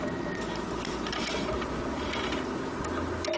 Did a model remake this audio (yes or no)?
no